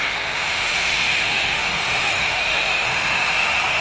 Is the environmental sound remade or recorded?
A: remade